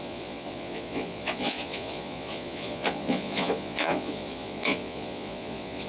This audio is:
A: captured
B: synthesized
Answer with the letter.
B